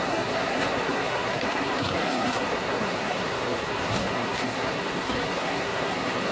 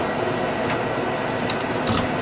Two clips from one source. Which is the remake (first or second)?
first